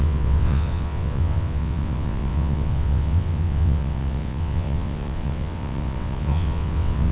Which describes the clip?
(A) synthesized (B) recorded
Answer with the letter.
A